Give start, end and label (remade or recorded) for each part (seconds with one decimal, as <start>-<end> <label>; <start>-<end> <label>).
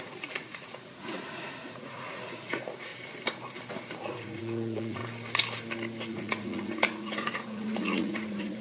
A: 0.0-2.9 remade; 2.9-4.0 recorded; 4.0-5.0 remade; 5.0-6.1 recorded; 6.1-8.6 remade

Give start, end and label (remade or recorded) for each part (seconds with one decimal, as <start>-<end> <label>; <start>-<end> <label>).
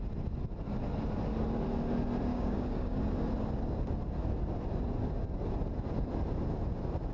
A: 0.0-2.3 recorded; 2.3-3.0 remade; 3.0-7.1 recorded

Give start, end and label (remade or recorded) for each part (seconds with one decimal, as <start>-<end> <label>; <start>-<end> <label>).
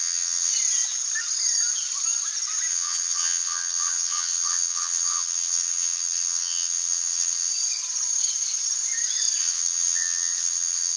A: 0.0-0.5 remade; 0.5-2.7 recorded; 2.7-7.5 remade; 7.5-9.4 recorded; 9.4-11.0 remade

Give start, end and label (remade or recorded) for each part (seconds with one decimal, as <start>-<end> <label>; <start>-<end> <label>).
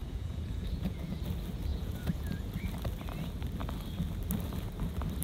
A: 0.0-1.2 remade; 1.2-1.7 recorded; 1.7-2.5 remade; 2.5-5.2 recorded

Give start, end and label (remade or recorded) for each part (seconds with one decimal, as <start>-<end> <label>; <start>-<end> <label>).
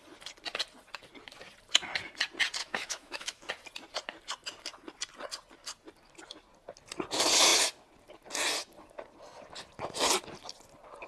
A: 0.0-2.6 recorded; 2.6-3.5 remade; 3.5-11.1 recorded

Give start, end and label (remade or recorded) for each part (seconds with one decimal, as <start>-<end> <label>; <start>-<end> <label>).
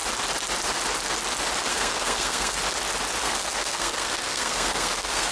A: 0.0-1.7 recorded; 1.7-2.6 remade; 2.6-3.2 recorded; 3.2-5.3 remade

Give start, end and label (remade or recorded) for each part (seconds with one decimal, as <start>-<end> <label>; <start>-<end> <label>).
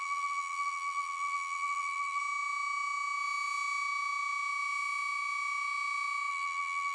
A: 0.0-2.2 remade; 2.2-6.3 recorded; 6.3-6.9 remade